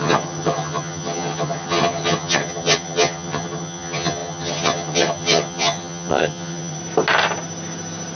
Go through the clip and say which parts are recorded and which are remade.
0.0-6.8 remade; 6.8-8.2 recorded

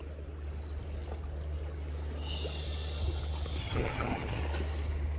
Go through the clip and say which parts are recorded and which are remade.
0.0-3.6 recorded; 3.6-4.4 remade; 4.4-5.2 recorded